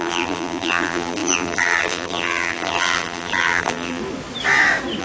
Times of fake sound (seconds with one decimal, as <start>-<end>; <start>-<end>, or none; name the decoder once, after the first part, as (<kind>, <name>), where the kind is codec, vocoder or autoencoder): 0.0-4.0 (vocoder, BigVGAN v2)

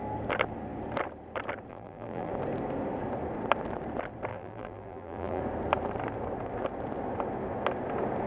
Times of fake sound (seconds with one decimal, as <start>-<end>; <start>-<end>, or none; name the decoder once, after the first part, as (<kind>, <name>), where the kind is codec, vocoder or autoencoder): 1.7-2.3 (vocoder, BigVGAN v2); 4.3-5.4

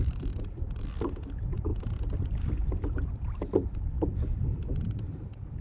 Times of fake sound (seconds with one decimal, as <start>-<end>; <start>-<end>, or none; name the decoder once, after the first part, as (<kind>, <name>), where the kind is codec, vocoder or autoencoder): 1.7-5.1 (vocoder, BigVGAN v2)